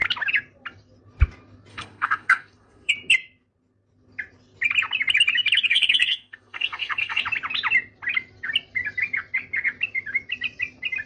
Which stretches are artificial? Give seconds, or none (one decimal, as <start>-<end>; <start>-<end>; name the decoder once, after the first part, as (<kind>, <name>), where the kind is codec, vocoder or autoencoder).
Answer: 1.7-2.9 (codec, SNAC); 5.7-7.2